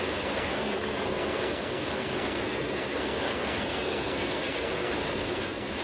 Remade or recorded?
remade